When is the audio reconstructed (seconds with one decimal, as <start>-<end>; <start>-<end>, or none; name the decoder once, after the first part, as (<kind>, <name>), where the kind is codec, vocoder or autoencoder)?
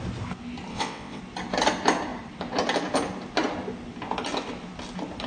0.7-1.2 (vocoder, WaveNeXt)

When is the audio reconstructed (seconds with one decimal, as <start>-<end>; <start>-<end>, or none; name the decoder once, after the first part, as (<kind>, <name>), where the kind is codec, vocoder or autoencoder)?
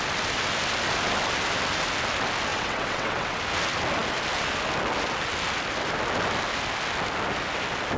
2.5-3.4 (vocoder, WaveNeXt)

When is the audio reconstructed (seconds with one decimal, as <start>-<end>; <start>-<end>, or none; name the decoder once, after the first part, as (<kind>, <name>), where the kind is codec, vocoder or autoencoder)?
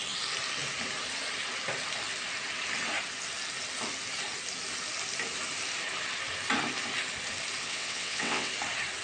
7.6-8.5 (vocoder, WaveNeXt)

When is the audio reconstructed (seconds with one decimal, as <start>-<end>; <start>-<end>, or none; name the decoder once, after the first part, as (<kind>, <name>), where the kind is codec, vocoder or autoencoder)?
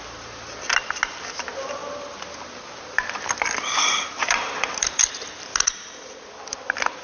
none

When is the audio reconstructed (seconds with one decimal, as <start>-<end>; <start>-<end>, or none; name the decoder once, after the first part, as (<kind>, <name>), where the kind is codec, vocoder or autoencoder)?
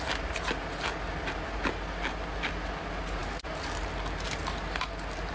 none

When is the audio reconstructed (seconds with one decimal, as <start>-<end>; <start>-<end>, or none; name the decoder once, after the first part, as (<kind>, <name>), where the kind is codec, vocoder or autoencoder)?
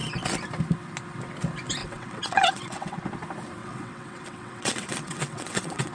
1.8-3.0 (vocoder, WaveNeXt); 3.6-5.9